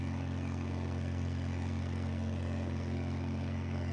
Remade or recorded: remade